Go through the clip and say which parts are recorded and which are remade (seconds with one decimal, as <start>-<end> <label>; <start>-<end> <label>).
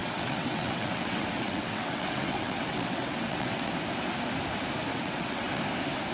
0.0-3.7 remade; 3.7-4.9 recorded; 4.9-5.6 remade; 5.6-6.1 recorded